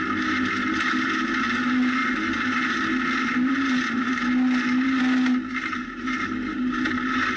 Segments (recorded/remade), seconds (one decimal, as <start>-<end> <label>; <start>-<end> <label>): 0.0-7.4 recorded